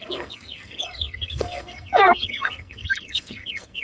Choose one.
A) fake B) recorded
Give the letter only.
A